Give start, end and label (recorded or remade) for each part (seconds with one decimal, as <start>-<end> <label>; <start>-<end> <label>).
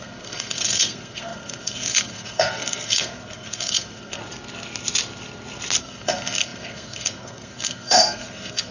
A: 0.0-4.2 remade; 4.2-5.8 recorded; 5.8-8.7 remade